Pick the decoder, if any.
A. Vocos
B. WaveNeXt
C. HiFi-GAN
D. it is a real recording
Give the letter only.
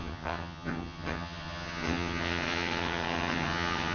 C